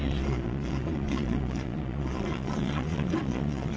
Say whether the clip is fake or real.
fake